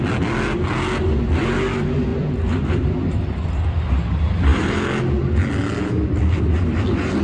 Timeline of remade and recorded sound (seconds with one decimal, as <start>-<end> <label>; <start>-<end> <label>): 0.0-2.1 recorded; 2.1-3.9 remade; 3.9-7.2 recorded